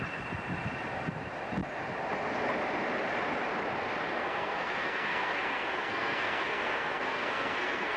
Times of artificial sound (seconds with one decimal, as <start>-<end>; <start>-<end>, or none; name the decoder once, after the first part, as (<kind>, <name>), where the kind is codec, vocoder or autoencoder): 4.1-8.0 (codec, SNAC)